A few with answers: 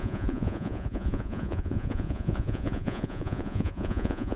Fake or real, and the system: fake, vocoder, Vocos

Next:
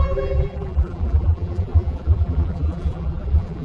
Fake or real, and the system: fake, vocoder, BigVGAN v2